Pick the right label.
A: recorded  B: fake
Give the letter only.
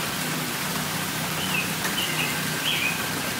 B